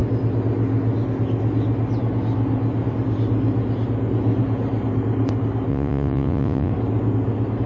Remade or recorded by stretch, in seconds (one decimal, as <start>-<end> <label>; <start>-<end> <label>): 0.0-5.7 recorded; 5.7-6.7 remade; 6.7-7.7 recorded